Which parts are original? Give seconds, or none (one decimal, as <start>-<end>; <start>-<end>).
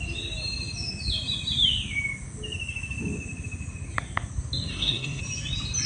0.0-4.7; 5.2-5.9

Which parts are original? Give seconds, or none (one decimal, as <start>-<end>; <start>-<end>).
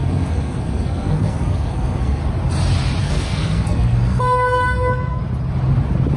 2.2-3.0; 5.2-6.2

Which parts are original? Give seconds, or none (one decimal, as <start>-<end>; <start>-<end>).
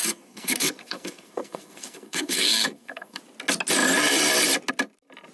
3.2-5.3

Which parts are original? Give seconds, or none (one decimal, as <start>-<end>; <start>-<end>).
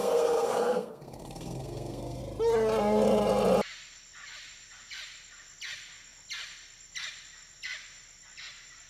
2.2-8.9